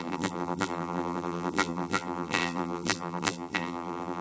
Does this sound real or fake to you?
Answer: fake